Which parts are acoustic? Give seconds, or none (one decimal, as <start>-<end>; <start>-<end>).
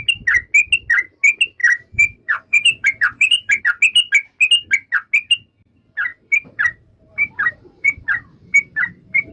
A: 0.0-1.6; 3.6-6.1